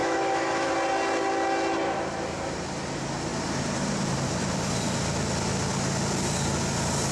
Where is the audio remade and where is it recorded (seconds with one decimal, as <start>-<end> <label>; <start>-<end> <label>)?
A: 0.0-0.7 remade; 0.7-7.1 recorded